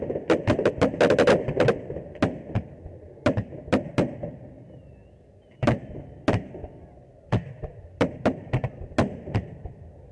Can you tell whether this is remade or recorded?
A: recorded